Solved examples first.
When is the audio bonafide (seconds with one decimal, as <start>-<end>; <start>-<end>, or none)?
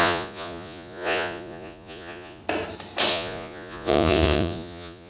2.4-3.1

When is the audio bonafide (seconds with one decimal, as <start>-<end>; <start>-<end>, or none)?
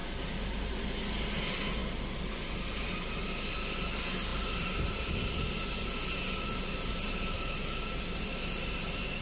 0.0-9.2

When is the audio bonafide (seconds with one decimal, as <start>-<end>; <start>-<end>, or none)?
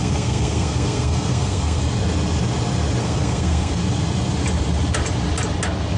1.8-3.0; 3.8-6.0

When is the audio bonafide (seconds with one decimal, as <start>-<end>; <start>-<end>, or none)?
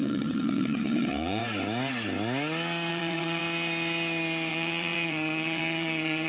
1.4-2.9; 3.4-4.5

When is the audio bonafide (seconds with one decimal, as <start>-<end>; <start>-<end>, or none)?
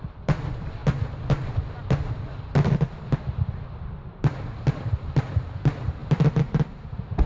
0.8-4.7